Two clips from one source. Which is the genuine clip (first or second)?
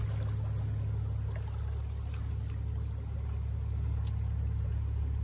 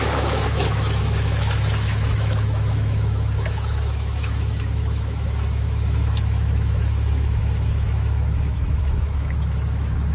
first